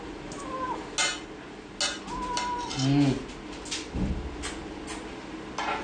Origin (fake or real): real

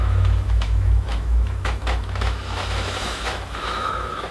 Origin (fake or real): fake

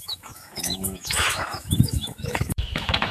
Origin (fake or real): fake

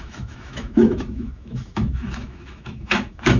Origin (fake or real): fake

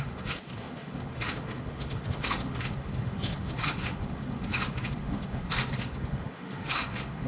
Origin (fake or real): fake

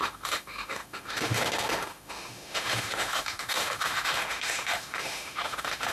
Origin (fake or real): fake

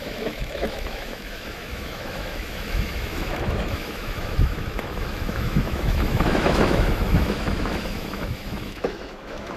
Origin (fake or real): fake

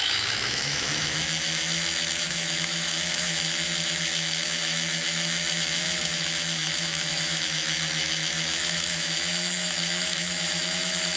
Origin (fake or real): fake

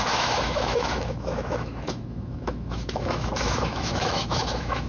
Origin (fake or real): fake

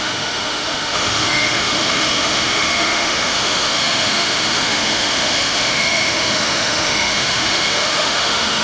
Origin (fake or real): fake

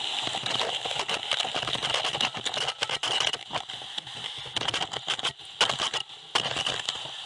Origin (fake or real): real